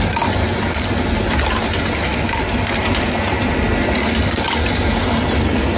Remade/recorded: recorded